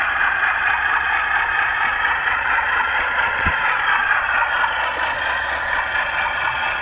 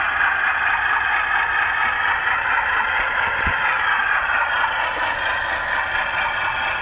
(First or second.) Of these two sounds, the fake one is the first